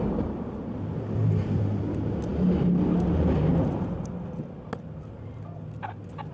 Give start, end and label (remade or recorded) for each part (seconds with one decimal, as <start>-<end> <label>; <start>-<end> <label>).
0.0-6.3 recorded